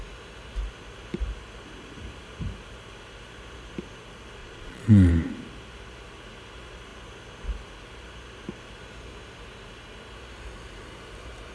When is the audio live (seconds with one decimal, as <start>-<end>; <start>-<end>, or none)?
0.0-4.4; 5.1-11.5